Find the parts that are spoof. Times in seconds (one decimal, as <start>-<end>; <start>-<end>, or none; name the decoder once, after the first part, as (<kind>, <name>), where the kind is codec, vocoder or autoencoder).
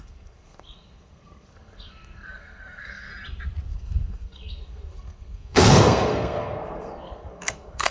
0.0-3.1 (codec, SNAC); 3.7-7.9